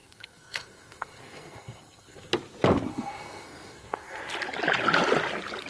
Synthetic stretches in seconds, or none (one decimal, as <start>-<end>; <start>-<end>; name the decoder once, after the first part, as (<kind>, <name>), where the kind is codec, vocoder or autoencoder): 0.0-2.3 (codec, SNAC); 2.9-4.2